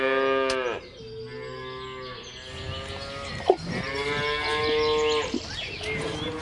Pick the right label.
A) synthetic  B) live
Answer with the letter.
B